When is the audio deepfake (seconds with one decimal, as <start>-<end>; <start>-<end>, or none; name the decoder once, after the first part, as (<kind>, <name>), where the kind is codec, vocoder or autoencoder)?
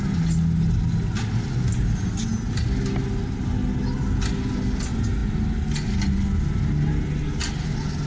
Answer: none